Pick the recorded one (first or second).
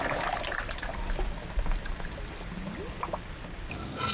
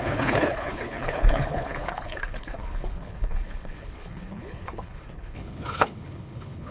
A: first